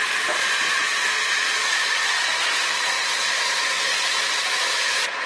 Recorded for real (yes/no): no